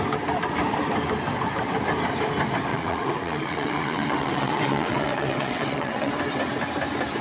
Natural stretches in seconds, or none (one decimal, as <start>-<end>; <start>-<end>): 0.0-2.7; 6.1-7.2